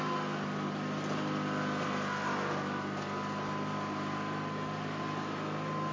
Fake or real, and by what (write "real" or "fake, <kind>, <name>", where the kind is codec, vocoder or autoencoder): real